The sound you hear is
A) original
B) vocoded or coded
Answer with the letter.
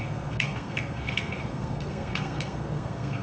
B